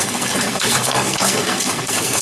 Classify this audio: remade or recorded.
remade